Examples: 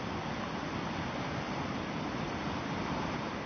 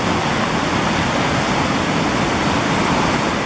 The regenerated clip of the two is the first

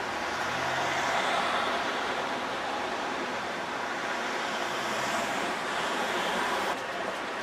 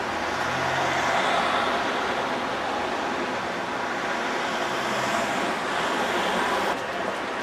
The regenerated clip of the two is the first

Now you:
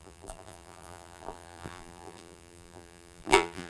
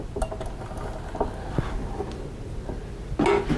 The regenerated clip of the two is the first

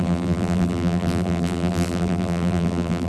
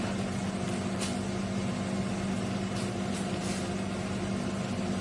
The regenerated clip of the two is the first